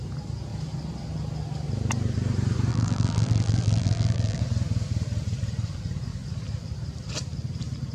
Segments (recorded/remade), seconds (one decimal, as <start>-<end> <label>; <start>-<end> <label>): 0.0-2.7 recorded; 2.7-4.4 remade; 4.4-7.9 recorded